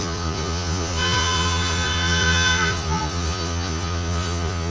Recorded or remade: remade